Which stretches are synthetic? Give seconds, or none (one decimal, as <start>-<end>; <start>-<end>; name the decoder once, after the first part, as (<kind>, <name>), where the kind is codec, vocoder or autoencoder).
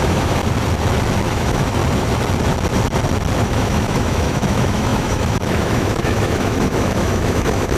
0.0-0.4 (autoencoder, DAC-VAE); 1.3-1.8; 3.4-7.8